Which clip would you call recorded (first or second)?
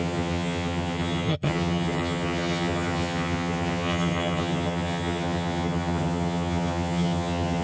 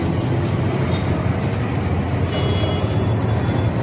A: second